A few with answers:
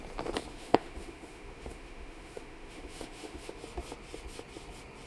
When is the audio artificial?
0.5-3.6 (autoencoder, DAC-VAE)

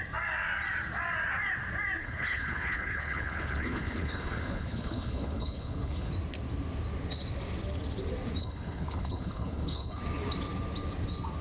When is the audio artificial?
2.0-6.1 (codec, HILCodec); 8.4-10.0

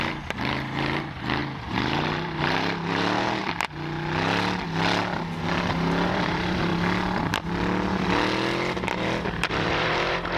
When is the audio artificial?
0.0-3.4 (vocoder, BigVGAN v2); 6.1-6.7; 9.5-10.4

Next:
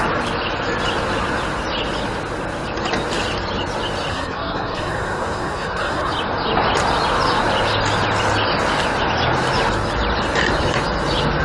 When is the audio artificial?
4.1-6.1 (codec, SNAC)

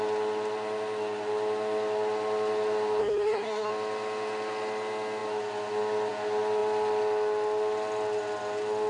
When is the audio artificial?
3.0-3.7 (codec, SNAC)

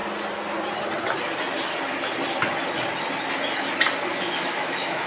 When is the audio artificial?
4.1-5.1 (autoencoder, DAC-VAE)